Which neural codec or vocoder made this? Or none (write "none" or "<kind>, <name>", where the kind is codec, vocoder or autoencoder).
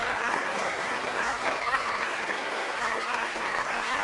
codec, SNAC